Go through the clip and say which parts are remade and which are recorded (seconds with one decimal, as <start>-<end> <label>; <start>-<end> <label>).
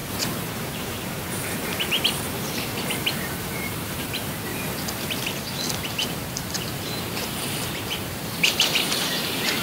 0.0-4.5 remade; 4.5-5.4 recorded; 5.4-9.6 remade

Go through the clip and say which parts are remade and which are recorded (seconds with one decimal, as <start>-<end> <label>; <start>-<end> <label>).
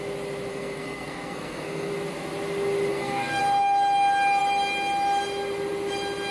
0.0-0.5 recorded; 0.5-1.9 remade; 1.9-2.9 recorded; 2.9-3.4 remade; 3.4-6.3 recorded